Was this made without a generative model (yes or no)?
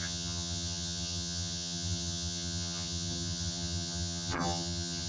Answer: no